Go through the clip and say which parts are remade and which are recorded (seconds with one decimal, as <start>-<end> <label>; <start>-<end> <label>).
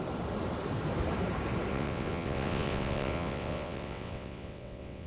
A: 0.0-1.7 recorded; 1.7-5.1 remade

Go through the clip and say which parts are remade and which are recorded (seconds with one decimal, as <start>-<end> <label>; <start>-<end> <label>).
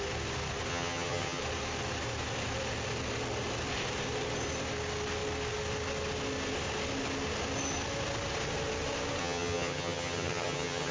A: 0.0-0.7 recorded; 0.7-1.4 remade; 1.4-9.2 recorded; 9.2-10.9 remade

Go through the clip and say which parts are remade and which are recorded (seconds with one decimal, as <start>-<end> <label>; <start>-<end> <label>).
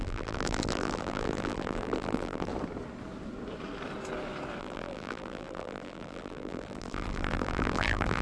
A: 0.0-2.5 remade; 2.5-4.6 recorded; 4.6-8.2 remade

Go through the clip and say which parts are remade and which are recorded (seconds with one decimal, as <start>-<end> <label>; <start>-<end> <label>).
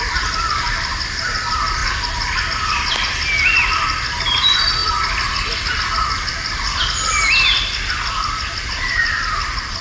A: 0.0-9.8 recorded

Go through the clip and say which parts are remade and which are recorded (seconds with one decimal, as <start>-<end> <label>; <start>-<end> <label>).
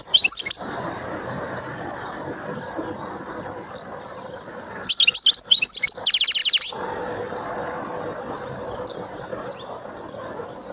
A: 0.0-10.7 recorded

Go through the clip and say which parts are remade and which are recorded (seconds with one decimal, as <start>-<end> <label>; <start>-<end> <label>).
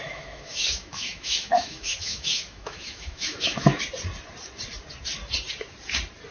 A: 0.0-3.8 remade; 3.8-6.3 recorded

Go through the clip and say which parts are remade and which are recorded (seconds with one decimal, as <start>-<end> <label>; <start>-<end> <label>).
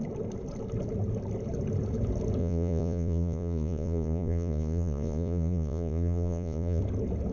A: 0.0-2.4 recorded; 2.4-6.8 remade; 6.8-7.3 recorded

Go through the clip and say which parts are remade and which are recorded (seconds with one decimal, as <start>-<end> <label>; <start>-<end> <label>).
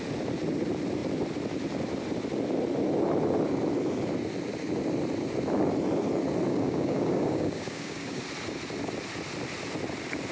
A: 0.0-6.5 recorded; 6.5-8.2 remade; 8.2-10.3 recorded